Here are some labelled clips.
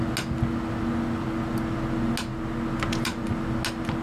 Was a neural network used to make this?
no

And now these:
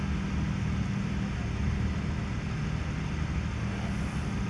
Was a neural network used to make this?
no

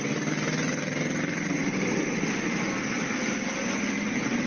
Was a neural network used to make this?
no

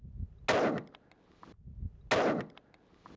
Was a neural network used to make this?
no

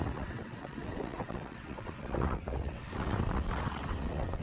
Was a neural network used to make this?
yes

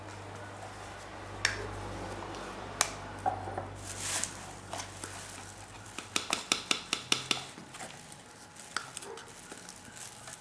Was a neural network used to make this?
no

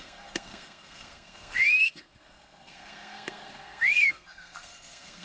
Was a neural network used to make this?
yes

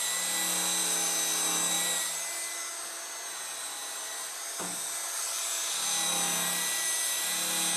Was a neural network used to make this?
no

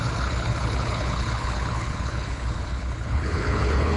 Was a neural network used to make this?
yes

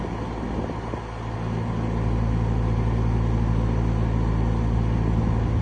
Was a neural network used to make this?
no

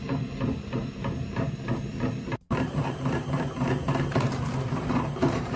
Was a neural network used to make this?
yes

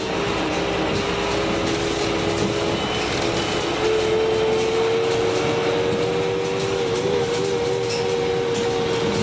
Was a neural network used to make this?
no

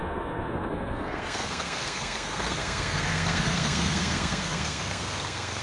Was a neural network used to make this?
yes